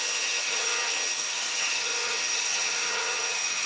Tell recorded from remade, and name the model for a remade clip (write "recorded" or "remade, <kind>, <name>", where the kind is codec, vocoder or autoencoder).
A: remade, vocoder, HiFi-GAN